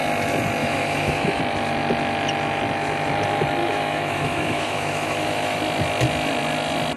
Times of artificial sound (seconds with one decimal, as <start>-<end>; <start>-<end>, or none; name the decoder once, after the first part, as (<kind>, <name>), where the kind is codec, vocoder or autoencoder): 0.6-1.4 (autoencoder, DAC-VAE); 3.6-5.6